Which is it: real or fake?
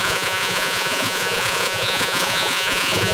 fake